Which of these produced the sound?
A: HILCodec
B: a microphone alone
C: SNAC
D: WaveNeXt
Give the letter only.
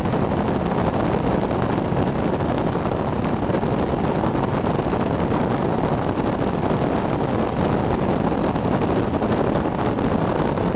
B